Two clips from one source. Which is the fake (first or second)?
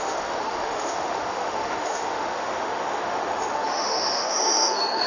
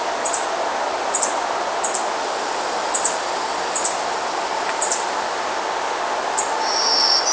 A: first